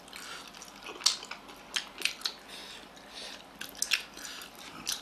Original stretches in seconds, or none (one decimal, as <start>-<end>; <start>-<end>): 0.0-5.0